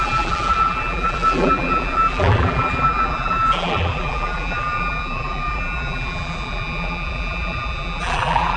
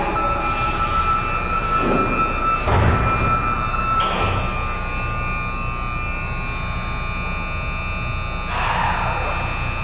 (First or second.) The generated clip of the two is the first